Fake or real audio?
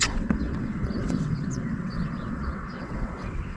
fake